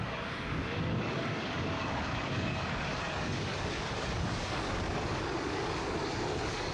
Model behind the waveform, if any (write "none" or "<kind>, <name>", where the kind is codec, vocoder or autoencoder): codec, DAC